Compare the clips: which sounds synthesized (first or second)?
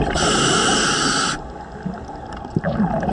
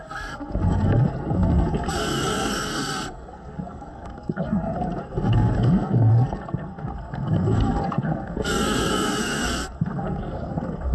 second